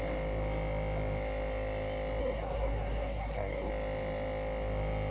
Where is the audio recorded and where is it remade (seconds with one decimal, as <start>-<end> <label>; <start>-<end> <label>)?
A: 0.0-2.2 recorded; 2.2-3.7 remade; 3.7-5.1 recorded